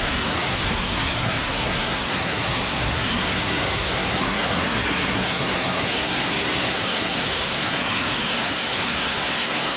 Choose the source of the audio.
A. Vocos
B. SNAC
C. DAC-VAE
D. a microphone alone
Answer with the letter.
B